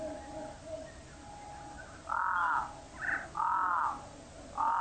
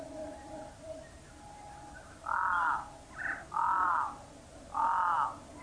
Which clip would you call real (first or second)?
first